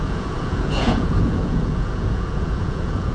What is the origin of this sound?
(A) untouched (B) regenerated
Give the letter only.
B